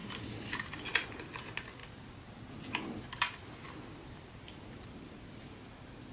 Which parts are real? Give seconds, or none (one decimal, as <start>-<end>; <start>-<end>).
0.0-6.1